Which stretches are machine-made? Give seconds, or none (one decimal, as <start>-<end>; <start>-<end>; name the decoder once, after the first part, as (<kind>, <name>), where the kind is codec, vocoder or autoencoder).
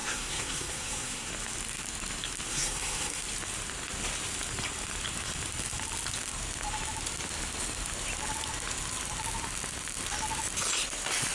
0.0-1.3 (codec, SNAC); 2.5-3.2